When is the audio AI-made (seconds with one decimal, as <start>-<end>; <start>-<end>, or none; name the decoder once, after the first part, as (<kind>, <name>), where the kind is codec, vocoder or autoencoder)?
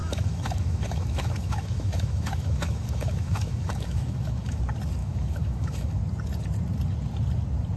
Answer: 0.0-4.6 (autoencoder, DAC-VAE); 5.0-6.0